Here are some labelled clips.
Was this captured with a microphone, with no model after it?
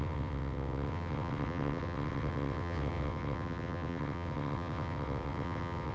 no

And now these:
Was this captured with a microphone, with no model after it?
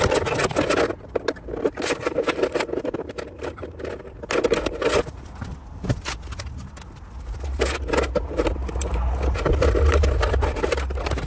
yes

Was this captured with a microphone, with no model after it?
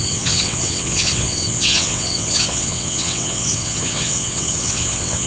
no